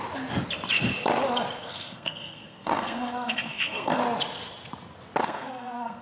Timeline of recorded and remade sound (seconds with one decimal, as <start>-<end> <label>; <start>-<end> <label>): 0.0-1.6 recorded; 1.6-4.0 remade; 4.0-5.2 recorded; 5.2-6.0 remade